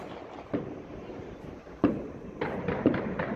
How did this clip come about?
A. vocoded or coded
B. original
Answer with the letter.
A